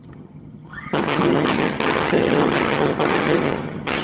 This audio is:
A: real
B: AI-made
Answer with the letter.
B